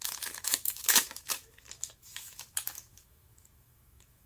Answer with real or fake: fake